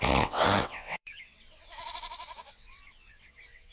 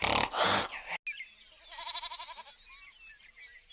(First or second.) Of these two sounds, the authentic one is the second